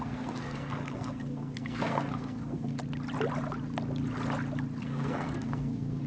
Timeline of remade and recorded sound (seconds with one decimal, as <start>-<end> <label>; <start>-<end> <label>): 0.0-2.8 remade; 2.8-4.8 recorded; 4.8-6.1 remade